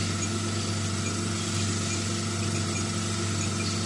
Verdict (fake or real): real